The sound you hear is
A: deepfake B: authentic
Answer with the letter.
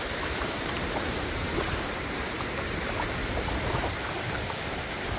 A